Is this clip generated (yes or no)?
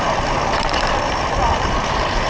yes